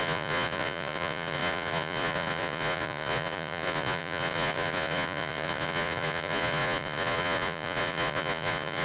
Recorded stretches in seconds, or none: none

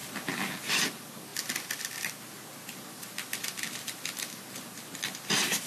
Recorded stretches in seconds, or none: 0.0-5.7

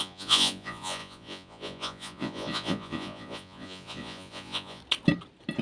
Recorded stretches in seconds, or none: 4.8-5.6

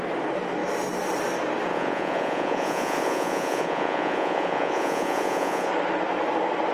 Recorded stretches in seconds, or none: 0.0-1.7; 5.7-6.7

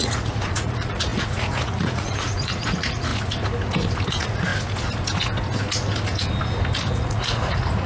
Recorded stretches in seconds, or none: 3.1-4.1; 4.5-6.9

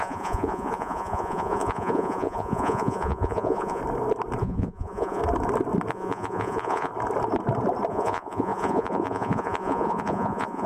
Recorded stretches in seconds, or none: 3.8-4.4; 5.2-5.9; 6.9-7.9